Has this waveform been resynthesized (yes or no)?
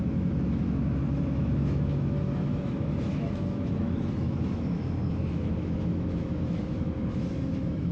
yes